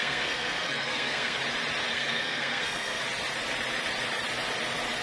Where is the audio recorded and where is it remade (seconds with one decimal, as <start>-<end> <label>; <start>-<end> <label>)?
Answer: 0.0-1.4 remade; 1.4-1.9 recorded; 1.9-3.0 remade; 3.0-5.0 recorded